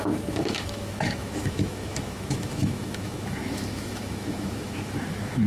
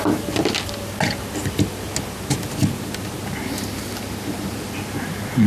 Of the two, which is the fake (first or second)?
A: first